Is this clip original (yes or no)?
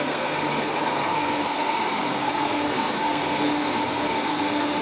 no